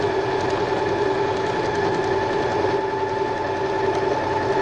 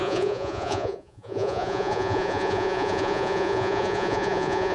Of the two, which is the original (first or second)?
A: first